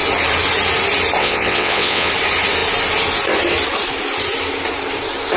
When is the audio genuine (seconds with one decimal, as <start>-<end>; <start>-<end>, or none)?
0.0-1.2; 2.1-5.4